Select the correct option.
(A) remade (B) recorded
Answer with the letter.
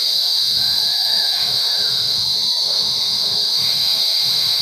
A